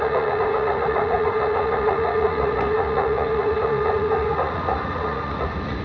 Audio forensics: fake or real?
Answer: fake